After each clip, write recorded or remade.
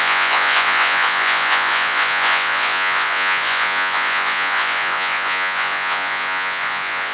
remade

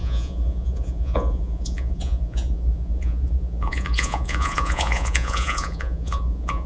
remade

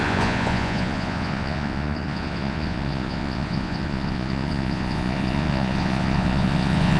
remade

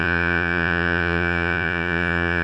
remade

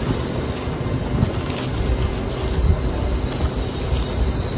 recorded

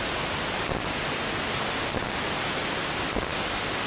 recorded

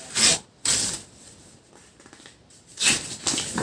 recorded